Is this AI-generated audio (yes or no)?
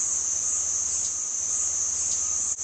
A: no